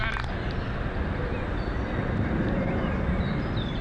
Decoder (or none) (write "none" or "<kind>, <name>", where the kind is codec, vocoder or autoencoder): none